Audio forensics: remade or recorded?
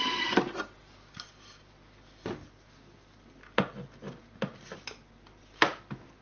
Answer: recorded